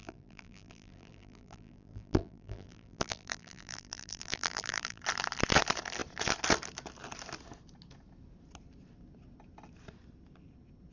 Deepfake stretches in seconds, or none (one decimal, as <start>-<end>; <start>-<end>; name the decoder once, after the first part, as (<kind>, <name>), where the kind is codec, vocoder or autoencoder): 0.0-5.0 (vocoder, BigVGAN v2)